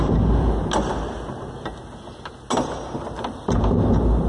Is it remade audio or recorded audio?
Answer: recorded